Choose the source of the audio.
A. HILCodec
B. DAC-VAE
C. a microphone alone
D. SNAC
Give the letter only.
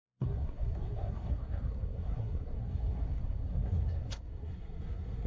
D